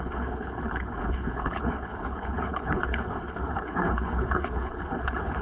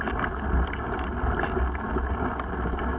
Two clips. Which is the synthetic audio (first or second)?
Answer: first